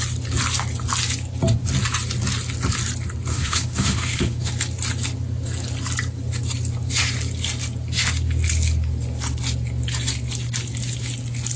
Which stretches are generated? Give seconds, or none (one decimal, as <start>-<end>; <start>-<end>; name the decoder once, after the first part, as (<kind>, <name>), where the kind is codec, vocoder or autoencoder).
3.3-4.5 (autoencoder, DAC-VAE)